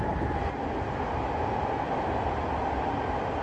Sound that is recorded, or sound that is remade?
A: recorded